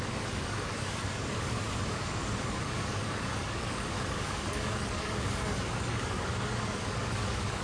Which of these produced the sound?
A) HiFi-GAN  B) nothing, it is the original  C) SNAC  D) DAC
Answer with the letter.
D